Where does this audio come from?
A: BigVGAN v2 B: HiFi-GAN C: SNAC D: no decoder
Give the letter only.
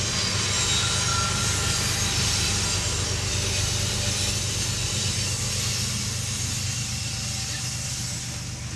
D